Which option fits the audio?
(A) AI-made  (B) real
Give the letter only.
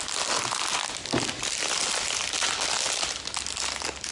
B